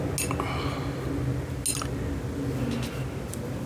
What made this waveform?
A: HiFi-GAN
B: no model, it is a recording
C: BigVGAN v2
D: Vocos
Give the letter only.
B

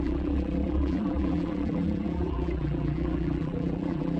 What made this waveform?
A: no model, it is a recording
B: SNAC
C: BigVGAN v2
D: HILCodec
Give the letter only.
C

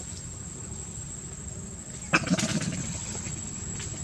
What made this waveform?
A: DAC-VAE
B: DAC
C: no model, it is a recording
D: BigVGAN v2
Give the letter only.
C